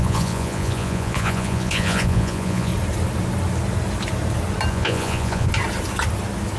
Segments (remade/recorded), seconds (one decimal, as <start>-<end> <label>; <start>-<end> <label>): 0.0-2.7 remade; 2.7-4.7 recorded; 4.7-5.5 remade; 5.5-6.6 recorded

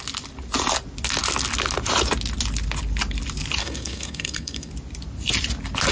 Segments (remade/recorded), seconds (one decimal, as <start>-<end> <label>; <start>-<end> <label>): 0.0-3.6 recorded; 3.6-4.7 remade; 4.7-5.9 recorded

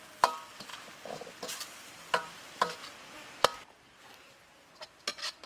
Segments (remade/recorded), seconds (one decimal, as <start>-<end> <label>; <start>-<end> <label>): 0.0-5.5 recorded

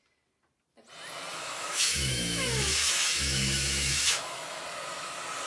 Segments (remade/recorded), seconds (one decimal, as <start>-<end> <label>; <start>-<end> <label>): 0.0-1.3 recorded; 1.3-4.6 remade; 4.6-5.5 recorded

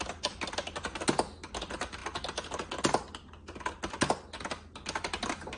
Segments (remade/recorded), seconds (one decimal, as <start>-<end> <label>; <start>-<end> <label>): 0.0-5.6 recorded